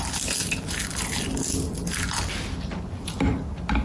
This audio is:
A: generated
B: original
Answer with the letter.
B